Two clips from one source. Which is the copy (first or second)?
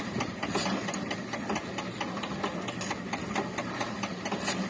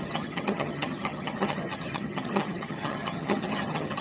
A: second